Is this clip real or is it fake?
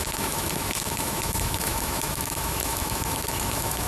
fake